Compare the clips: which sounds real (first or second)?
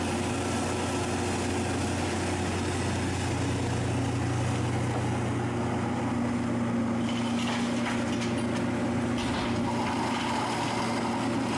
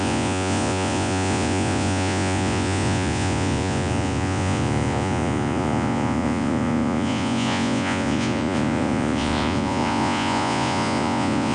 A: first